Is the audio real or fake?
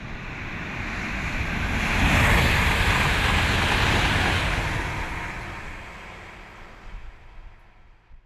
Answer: real